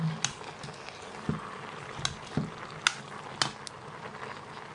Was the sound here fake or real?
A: real